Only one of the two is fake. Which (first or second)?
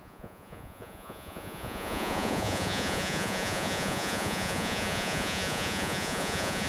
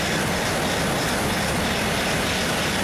first